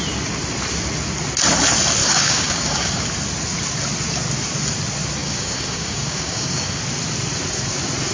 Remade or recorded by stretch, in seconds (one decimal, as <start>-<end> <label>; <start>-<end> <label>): 0.0-2.0 recorded; 2.0-3.1 remade; 3.1-5.2 recorded; 5.2-6.8 remade; 6.8-8.1 recorded